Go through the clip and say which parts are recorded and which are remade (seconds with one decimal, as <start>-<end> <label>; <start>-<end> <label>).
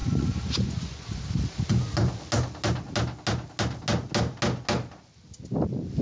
0.0-1.2 remade; 1.2-6.0 recorded